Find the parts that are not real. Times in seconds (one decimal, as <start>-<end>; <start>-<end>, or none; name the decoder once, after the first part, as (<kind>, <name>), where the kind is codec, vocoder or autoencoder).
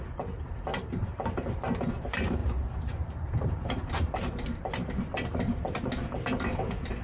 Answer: 0.0-7.0 (vocoder, BigVGAN v2)